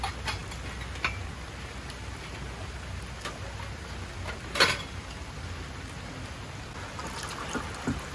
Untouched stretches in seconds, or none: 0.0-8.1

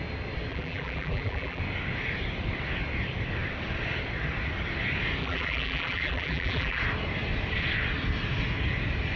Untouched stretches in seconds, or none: 0.0-0.5; 1.6-5.2; 6.8-9.2

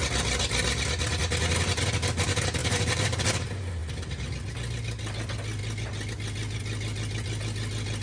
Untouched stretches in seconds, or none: 0.0-2.6; 3.2-8.0

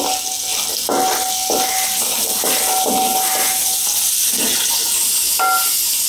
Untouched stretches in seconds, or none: 0.0-6.1

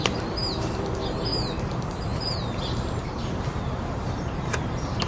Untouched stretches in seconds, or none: none

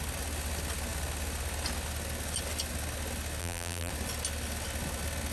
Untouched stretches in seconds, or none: 0.0-3.4; 3.9-5.3